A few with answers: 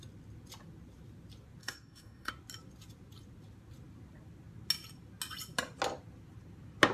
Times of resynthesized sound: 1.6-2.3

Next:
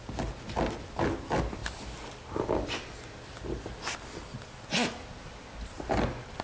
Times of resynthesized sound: none